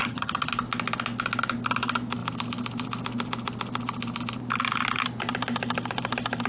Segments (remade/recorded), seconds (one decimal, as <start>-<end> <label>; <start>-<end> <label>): 0.0-0.5 remade; 0.5-6.5 recorded